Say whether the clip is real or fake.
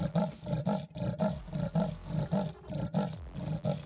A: real